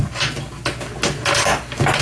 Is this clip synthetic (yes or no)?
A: no